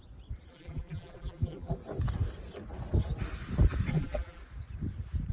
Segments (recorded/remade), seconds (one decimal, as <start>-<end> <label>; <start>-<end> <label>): 0.0-0.5 recorded; 0.5-1.8 remade; 1.8-3.9 recorded; 3.9-4.4 remade; 4.4-5.3 recorded